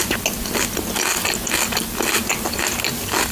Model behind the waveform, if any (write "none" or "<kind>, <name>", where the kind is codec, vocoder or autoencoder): none